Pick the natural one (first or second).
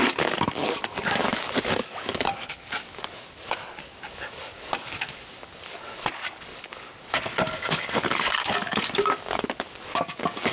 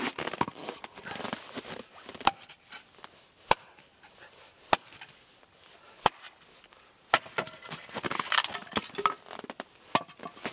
second